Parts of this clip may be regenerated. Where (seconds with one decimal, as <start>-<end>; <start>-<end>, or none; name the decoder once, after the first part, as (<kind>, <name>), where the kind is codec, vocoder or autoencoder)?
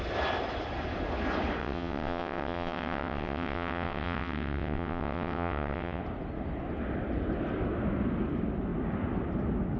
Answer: 1.6-6.0 (vocoder, WaveNeXt)